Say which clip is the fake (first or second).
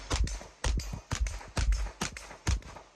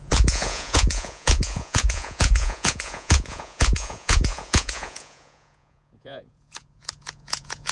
second